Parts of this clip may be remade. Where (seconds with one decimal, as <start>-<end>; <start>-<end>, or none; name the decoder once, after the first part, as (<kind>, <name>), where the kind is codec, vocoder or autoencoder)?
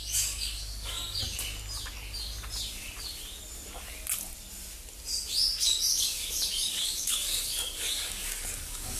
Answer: 0.0-1.2 (codec, DAC); 5.9-9.0